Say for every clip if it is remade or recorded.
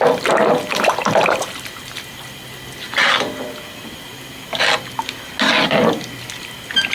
recorded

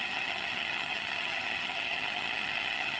remade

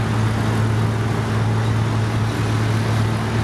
recorded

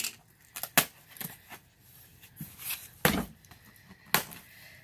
recorded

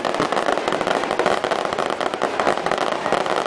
recorded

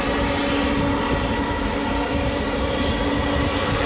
recorded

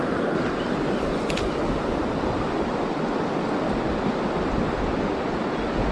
recorded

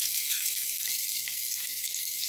remade